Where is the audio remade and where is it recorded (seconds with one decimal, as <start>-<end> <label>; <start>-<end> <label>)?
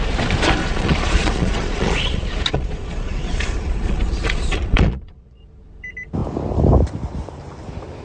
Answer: 0.0-0.6 recorded; 0.6-5.4 remade; 5.4-8.0 recorded